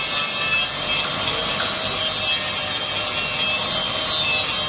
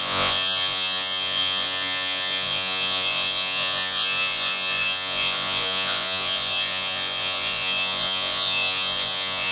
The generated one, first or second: second